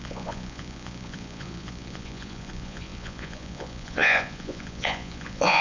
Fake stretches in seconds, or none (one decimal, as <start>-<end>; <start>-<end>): 0.0-5.6